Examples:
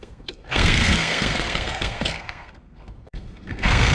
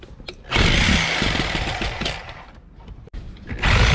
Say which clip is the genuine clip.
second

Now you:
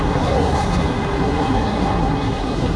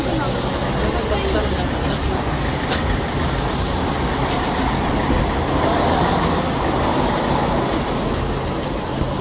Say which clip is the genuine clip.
second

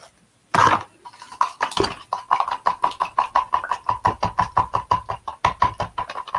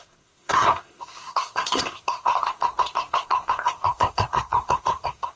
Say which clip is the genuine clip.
first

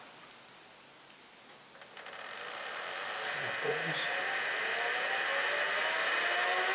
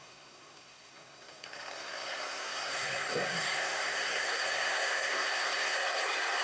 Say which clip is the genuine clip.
first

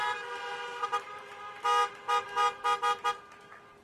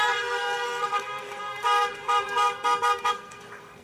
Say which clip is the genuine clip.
first